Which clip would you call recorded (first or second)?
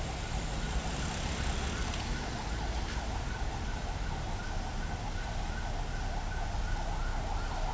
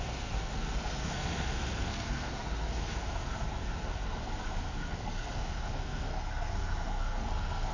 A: first